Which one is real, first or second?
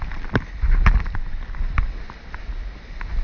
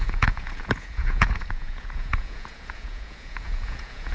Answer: first